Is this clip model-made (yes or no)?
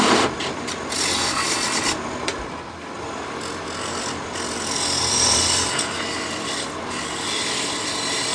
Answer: no